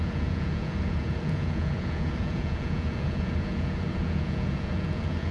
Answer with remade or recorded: remade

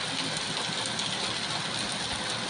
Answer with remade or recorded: recorded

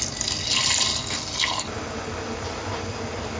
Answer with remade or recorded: recorded